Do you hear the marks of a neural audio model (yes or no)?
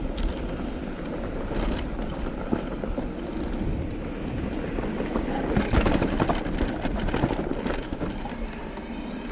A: no